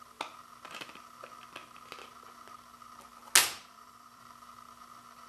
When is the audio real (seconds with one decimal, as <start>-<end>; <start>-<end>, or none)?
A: 0.0-3.4; 4.2-5.3